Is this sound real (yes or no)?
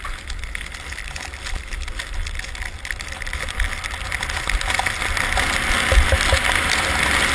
yes